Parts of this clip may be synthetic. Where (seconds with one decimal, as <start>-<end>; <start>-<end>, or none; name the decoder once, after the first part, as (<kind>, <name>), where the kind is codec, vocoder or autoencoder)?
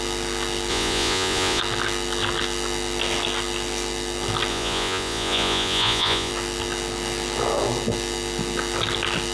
0.7-1.6 (vocoder, Vocos); 4.5-6.3